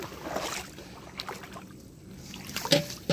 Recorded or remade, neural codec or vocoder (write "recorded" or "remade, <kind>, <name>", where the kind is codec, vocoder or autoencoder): recorded